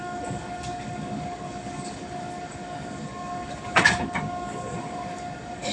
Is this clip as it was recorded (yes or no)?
no